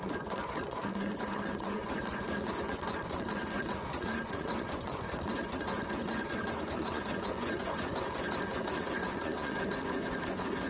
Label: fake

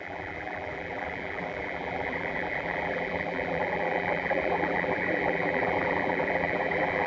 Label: fake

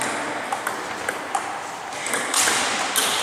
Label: real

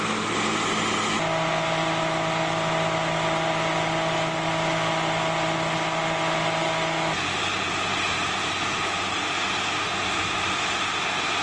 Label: real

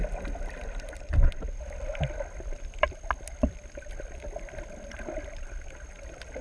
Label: fake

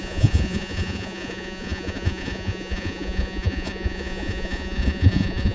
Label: fake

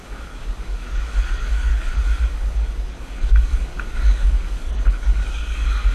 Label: fake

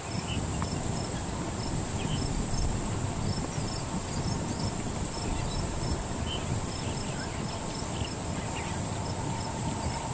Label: real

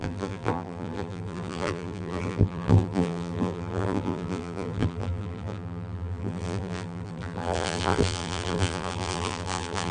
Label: fake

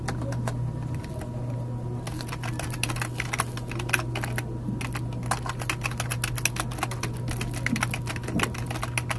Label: real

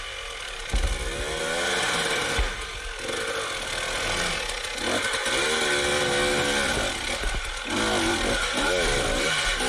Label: real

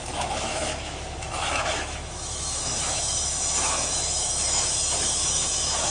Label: fake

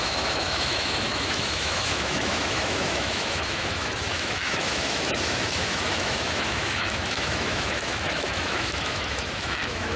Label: fake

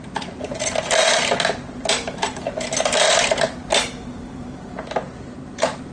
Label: real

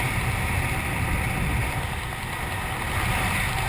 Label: real